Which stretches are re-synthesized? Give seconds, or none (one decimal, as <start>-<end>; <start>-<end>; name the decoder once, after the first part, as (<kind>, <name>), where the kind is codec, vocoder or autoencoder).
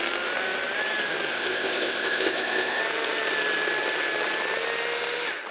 1.3-2.8 (codec, ZipCodec)